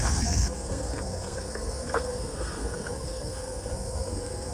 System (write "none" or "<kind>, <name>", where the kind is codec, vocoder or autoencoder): codec, SNAC